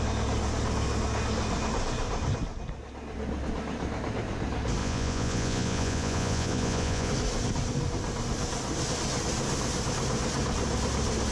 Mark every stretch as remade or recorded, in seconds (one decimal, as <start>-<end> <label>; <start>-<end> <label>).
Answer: 0.0-4.8 recorded; 4.8-7.1 remade; 7.1-11.3 recorded